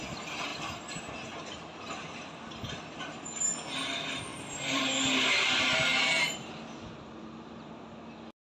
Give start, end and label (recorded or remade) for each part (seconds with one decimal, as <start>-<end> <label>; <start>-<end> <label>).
0.0-4.3 recorded; 4.3-4.8 remade; 4.8-5.9 recorded; 5.9-7.7 remade; 7.7-8.5 recorded